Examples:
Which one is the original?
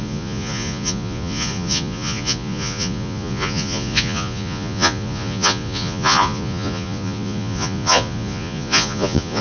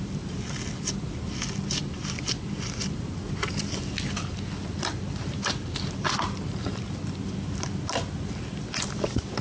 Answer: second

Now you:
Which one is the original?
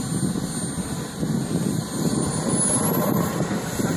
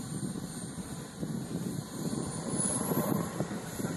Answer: first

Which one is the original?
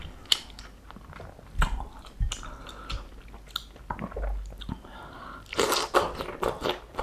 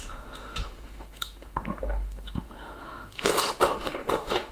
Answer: first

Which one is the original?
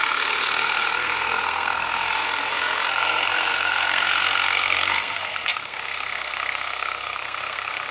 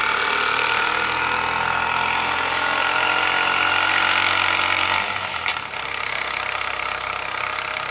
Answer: second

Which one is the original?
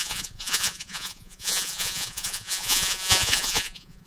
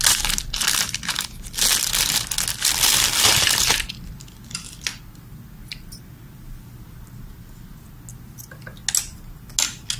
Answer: second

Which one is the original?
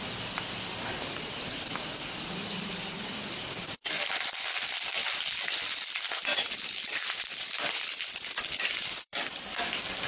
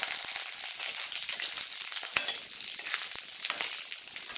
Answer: second